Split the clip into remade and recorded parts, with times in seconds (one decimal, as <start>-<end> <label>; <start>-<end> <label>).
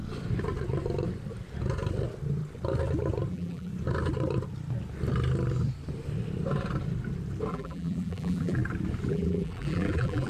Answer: 0.0-3.3 recorded; 3.3-3.7 remade; 3.7-7.5 recorded; 7.5-8.6 remade; 8.6-9.1 recorded; 9.1-10.3 remade